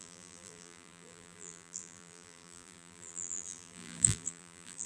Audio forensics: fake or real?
fake